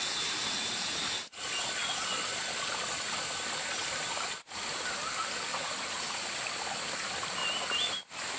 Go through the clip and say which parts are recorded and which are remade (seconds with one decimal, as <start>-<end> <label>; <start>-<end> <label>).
0.0-5.5 recorded; 5.5-6.4 remade; 6.4-8.4 recorded